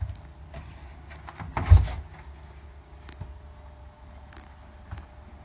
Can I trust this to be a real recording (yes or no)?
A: yes